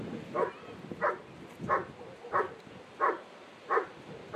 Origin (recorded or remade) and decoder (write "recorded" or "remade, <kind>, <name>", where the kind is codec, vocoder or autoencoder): recorded